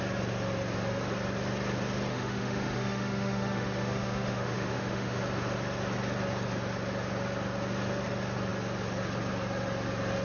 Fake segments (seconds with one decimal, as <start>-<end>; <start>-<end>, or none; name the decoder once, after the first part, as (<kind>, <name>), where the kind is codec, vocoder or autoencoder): 2.1-5.2 (autoencoder, DAC-VAE)